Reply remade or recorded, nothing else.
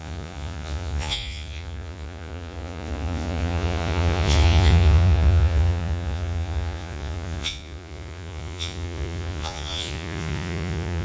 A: remade